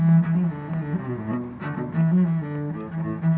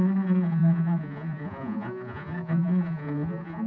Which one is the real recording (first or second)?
first